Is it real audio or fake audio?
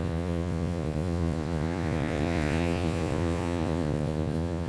fake